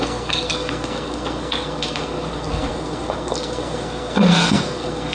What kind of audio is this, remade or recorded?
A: remade